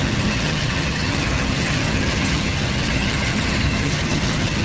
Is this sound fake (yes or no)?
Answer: yes